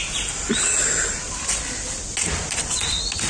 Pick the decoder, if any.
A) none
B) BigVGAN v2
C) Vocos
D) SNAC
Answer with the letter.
A